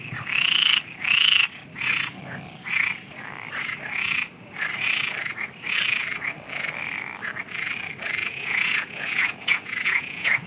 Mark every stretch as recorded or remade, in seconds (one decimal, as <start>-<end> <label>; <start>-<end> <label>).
0.0-8.2 recorded; 8.2-10.5 remade